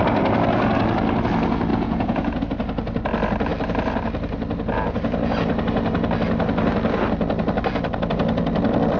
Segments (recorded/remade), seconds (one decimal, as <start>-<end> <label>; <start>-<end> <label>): 0.0-1.7 recorded; 1.7-2.4 remade; 2.4-9.0 recorded